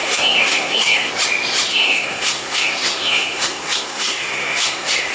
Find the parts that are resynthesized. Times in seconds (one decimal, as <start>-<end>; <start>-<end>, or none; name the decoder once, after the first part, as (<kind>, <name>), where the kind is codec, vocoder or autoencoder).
0.0-1.1 (codec, SNAC); 1.7-5.1